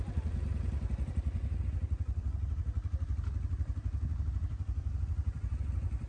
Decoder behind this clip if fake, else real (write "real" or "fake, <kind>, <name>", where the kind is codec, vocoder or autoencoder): real